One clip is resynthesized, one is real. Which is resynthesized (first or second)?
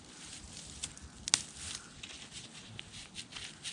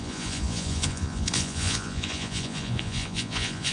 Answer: second